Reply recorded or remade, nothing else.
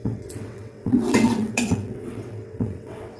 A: remade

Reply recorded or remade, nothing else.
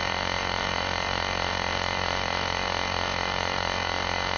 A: remade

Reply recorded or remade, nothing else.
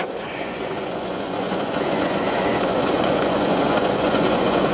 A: remade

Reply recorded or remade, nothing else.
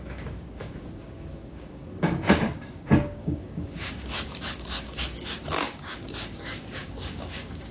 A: remade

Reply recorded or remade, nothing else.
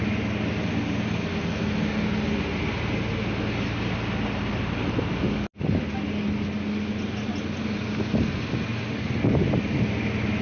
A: recorded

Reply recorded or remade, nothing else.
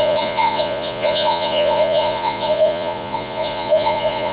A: remade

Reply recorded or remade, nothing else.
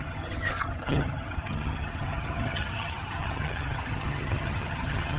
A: remade